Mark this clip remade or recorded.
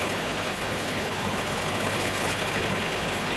remade